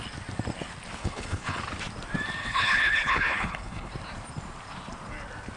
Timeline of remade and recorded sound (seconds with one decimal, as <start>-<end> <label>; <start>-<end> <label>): 0.0-1.0 recorded; 1.0-1.6 remade; 1.6-2.4 recorded; 2.4-3.9 remade; 3.9-5.6 recorded